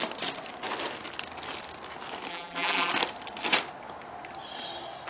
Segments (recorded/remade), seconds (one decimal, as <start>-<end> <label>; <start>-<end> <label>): 0.0-2.3 recorded; 2.3-2.9 remade; 2.9-5.1 recorded